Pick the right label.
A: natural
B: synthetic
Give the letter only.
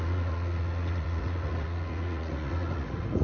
B